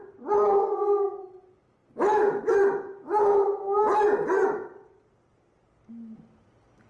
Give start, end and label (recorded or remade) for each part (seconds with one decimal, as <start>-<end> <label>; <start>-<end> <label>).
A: 0.0-6.9 recorded